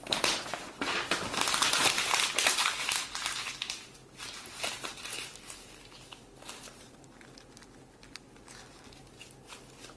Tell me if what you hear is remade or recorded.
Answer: recorded